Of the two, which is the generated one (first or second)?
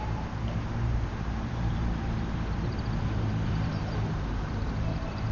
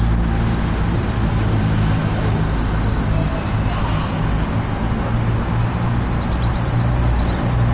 first